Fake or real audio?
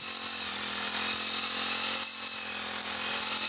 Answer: real